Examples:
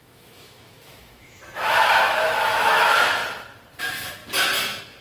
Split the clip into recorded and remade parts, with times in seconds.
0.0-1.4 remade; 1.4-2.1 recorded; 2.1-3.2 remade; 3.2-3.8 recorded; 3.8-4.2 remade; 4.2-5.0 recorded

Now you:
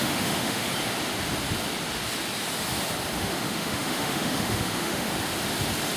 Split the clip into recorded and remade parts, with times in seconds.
0.0-0.7 remade; 0.7-3.2 recorded; 3.2-5.1 remade; 5.1-6.0 recorded